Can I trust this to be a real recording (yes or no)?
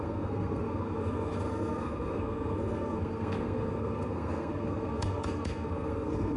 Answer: no